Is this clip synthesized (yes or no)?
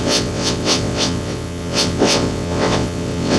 yes